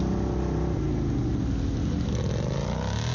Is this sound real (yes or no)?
yes